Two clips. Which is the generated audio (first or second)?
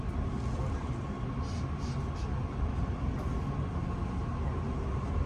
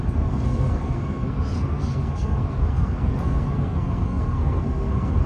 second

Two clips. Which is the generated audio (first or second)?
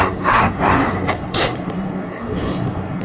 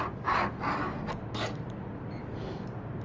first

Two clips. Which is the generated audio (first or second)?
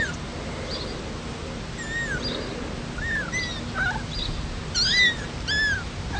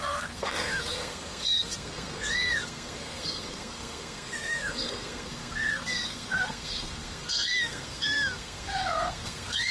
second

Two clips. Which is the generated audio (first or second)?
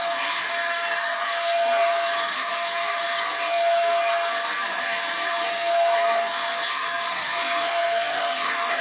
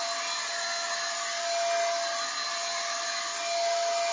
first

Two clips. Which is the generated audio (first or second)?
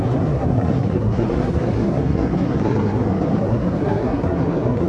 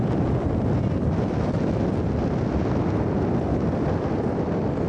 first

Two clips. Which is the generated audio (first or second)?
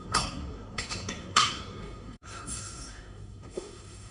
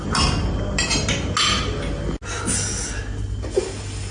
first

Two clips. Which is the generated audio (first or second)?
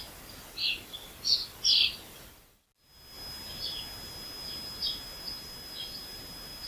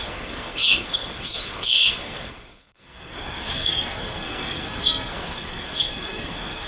second